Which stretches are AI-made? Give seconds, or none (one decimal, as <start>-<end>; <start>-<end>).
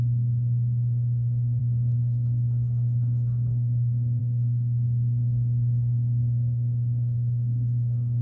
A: 0.0-8.2